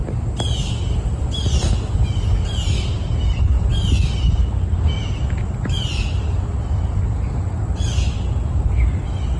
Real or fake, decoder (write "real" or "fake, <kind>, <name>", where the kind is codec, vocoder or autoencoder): real